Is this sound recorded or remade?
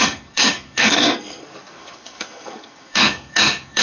remade